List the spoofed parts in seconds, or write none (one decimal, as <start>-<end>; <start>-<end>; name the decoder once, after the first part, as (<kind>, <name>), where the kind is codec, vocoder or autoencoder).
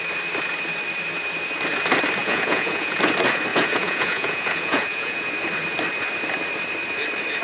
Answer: 2.2-3.0 (vocoder, Vocos); 3.5-5.3